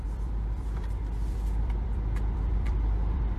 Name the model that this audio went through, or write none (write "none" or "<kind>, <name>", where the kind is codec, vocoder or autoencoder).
vocoder, BigVGAN v2